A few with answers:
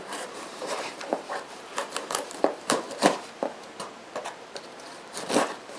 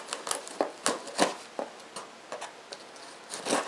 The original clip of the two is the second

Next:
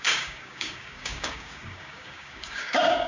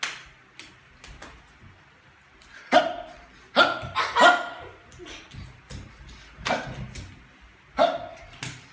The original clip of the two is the second